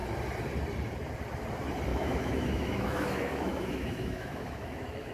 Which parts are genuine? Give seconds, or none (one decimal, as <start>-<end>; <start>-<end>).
0.0-1.9